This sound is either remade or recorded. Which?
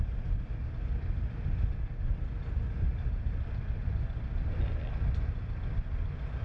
recorded